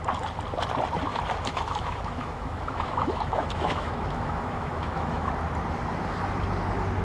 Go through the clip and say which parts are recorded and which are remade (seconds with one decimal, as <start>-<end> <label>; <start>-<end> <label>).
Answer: 0.0-1.1 recorded; 1.1-5.3 remade; 5.3-7.0 recorded